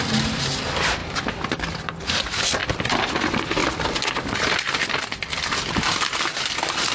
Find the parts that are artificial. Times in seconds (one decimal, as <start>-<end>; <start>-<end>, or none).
none